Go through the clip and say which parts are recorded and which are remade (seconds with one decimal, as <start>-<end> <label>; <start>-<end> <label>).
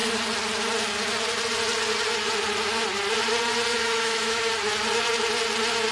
0.0-3.8 recorded; 3.8-4.5 remade; 4.5-5.9 recorded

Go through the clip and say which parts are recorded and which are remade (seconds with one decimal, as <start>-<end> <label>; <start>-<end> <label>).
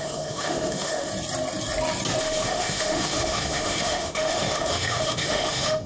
0.0-1.1 remade; 1.1-2.2 recorded; 2.2-5.9 remade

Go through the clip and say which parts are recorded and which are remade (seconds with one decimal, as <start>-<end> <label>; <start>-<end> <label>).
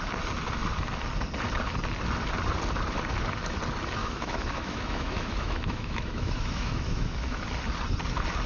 0.0-4.0 recorded; 4.0-7.4 remade; 7.4-8.5 recorded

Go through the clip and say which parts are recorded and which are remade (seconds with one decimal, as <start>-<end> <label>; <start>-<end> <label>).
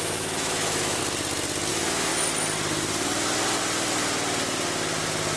0.0-1.0 remade; 1.0-1.7 recorded; 1.7-2.1 remade; 2.1-5.4 recorded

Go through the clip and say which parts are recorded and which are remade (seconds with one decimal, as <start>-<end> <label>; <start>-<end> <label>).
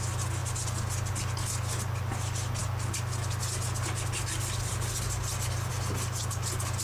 0.0-6.8 recorded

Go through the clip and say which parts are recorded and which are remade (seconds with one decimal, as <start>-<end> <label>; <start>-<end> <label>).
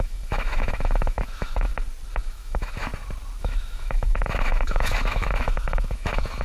0.0-1.7 remade; 1.7-2.2 recorded; 2.2-2.9 remade; 2.9-3.4 recorded; 3.4-6.4 remade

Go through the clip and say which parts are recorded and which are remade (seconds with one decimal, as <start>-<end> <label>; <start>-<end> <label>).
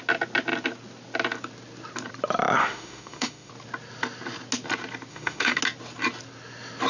0.0-2.6 recorded; 2.6-3.5 remade; 3.5-5.1 recorded; 5.1-5.6 remade; 5.6-6.9 recorded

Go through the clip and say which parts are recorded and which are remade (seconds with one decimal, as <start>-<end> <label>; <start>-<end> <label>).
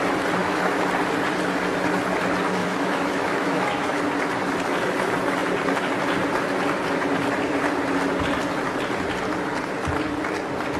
0.0-0.4 recorded; 0.4-0.9 remade; 0.9-2.6 recorded; 2.6-4.0 remade; 4.0-10.8 recorded